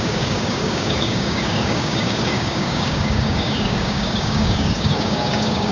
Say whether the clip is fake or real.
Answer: fake